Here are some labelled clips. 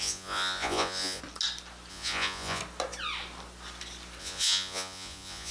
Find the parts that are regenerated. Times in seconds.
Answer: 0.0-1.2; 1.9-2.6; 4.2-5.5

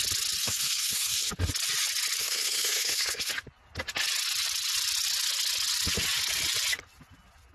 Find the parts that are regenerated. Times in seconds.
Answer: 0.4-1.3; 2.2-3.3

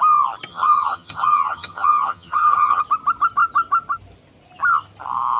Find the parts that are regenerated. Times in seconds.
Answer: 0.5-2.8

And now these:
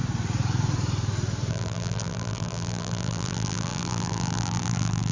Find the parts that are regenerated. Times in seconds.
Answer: 1.5-5.1

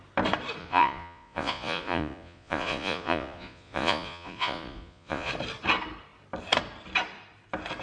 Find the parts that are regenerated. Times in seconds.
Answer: 0.6-5.3

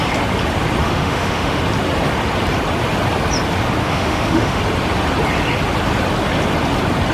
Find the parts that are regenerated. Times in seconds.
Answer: 0.8-1.6; 3.8-4.6

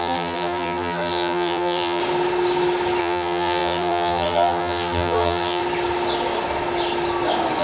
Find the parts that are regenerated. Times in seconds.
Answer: 0.0-2.0; 3.0-5.6

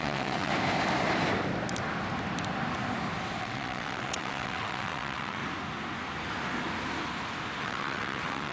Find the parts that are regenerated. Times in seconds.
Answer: 0.0-0.5; 3.4-5.4; 7.6-8.5